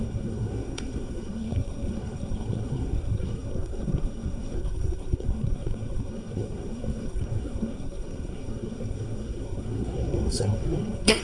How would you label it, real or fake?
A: fake